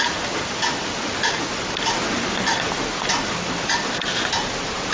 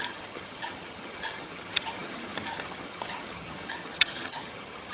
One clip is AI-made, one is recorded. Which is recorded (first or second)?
first